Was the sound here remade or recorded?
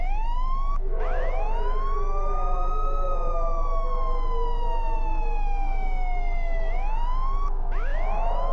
remade